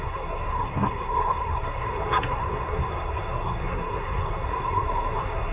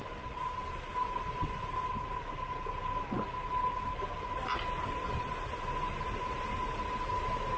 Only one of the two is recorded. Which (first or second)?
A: second